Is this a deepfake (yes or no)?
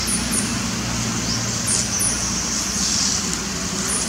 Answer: no